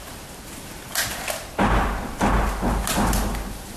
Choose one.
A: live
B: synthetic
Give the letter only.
A